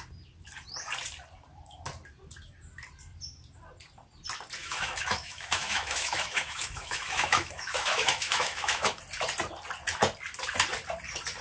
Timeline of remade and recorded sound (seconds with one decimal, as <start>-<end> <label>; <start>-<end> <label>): 0.0-4.6 recorded; 4.6-9.0 remade; 9.0-11.4 recorded